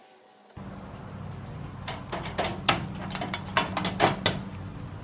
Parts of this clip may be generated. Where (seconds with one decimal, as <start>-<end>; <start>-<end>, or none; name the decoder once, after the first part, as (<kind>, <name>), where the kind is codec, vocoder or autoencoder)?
none